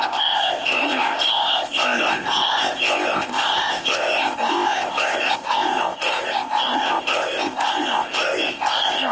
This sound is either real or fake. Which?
fake